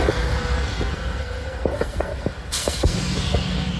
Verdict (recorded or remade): remade